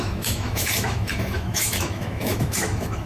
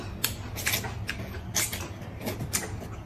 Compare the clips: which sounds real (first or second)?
second